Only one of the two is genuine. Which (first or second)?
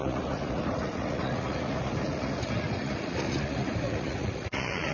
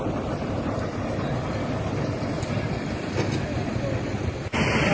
second